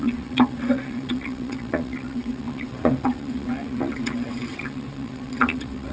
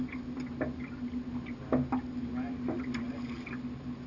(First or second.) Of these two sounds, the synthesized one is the first